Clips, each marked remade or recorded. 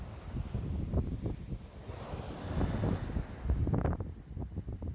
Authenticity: recorded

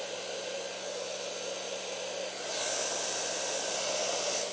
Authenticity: recorded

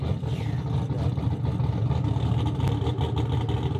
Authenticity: recorded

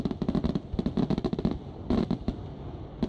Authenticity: recorded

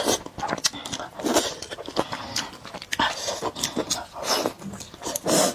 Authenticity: recorded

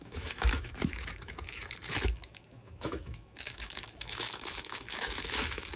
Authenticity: remade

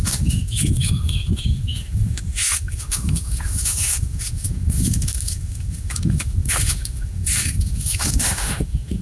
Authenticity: remade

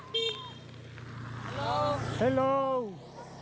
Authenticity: recorded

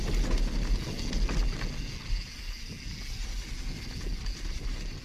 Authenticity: recorded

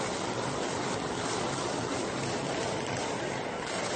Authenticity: recorded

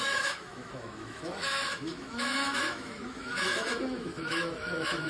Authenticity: remade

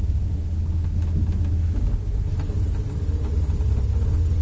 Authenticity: recorded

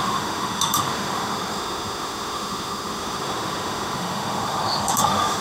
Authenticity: remade